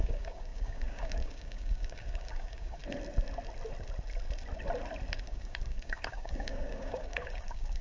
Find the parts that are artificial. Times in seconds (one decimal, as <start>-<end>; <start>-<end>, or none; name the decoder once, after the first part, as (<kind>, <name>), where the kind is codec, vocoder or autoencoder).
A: 0.0-2.8 (codec, DAC); 5.2-7.8